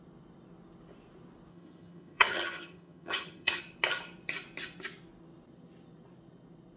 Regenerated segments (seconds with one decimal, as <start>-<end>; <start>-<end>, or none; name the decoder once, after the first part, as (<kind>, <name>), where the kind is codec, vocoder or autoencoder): 1.5-3.6 (vocoder, HiFi-GAN)